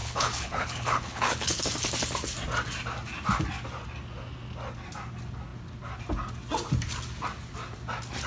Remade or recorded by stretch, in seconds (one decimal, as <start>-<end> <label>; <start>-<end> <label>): 0.0-1.6 remade; 1.6-8.3 recorded